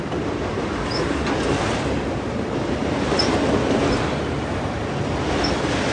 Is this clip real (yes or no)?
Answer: yes